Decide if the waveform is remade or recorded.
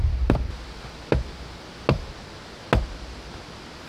recorded